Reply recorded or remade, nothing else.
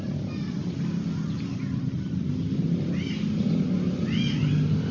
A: recorded